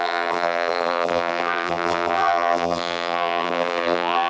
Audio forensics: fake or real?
fake